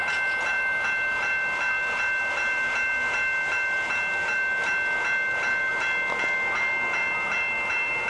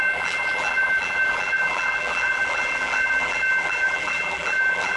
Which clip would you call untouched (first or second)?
first